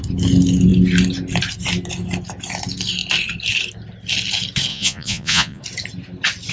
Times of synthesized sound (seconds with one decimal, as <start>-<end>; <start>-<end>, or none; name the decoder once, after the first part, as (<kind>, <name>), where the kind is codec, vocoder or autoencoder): 4.7-5.6 (vocoder, Vocos)